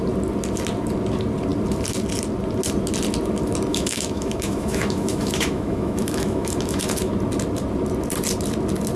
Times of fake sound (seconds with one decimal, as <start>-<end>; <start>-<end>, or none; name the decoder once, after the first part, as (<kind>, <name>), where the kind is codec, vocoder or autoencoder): 3.7-7.1 (autoencoder, DAC-VAE)